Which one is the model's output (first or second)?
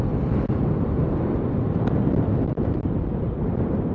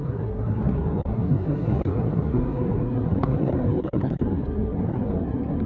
second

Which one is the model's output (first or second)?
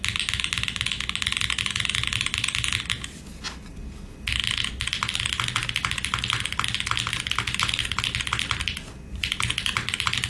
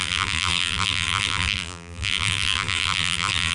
second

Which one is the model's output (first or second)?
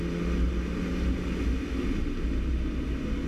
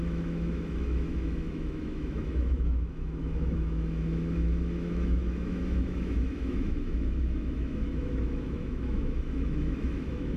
second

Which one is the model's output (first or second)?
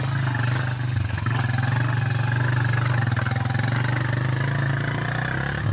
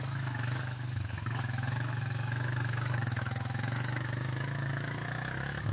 second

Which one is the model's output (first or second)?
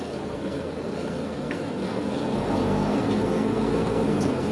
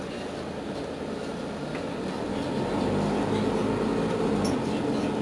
first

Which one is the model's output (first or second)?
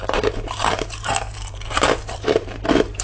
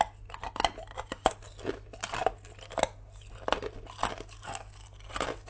first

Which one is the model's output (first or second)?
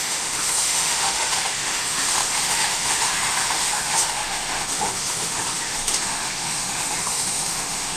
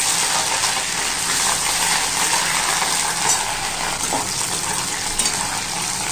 first